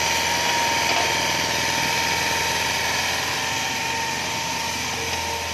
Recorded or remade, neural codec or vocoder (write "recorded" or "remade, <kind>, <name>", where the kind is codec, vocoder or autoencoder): recorded